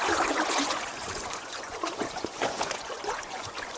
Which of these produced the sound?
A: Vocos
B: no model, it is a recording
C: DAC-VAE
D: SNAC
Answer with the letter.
A